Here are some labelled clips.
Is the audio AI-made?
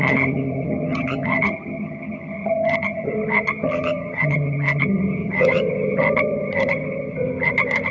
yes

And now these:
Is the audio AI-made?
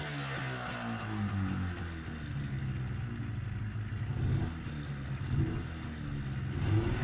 no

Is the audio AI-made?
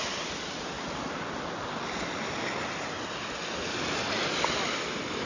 no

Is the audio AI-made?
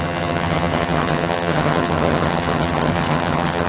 yes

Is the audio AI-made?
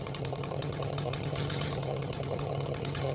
yes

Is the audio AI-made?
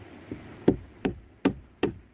no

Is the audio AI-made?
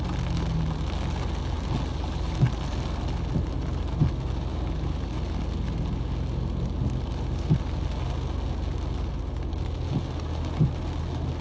no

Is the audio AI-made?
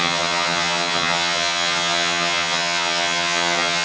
yes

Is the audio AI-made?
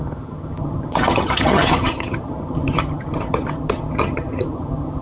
yes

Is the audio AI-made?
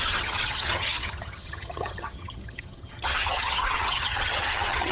yes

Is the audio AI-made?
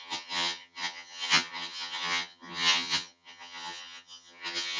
yes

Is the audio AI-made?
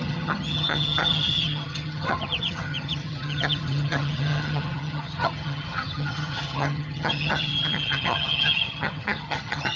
yes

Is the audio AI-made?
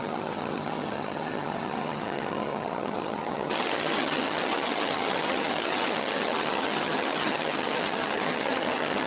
yes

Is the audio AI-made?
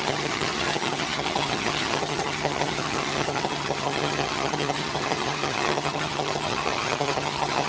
yes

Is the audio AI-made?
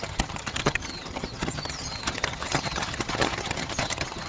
yes